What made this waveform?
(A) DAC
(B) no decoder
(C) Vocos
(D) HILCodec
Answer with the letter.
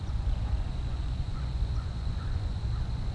C